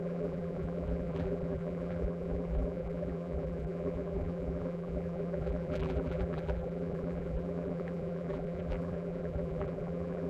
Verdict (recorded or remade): remade